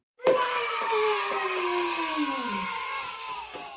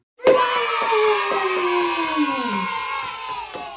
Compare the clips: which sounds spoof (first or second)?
first